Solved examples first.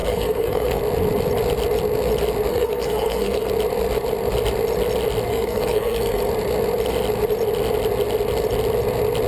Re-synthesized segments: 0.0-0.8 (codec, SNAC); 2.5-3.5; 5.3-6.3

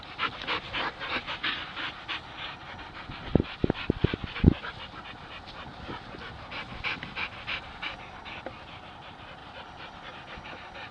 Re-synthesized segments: none

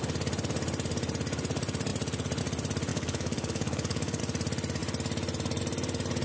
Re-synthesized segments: 2.9-4.2 (codec, DAC)

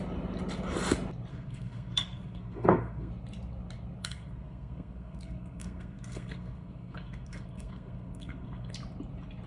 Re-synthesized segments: 1.3-3.1 (codec, SNAC); 4.0-8.7